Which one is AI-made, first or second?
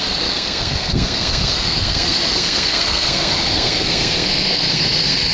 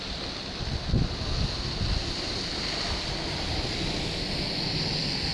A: first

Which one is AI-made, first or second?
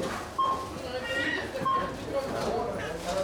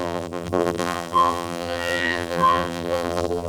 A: second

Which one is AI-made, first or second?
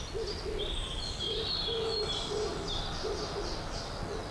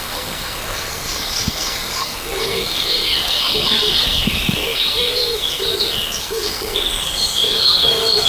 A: second